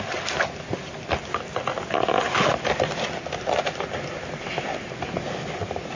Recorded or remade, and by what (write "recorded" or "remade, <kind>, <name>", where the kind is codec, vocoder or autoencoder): recorded